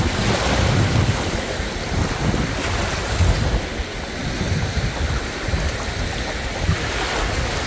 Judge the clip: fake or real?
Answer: real